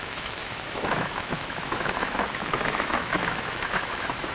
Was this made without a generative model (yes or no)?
no